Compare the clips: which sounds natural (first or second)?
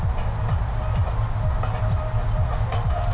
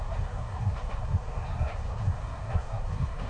first